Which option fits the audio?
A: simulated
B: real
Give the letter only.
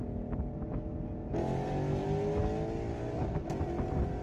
B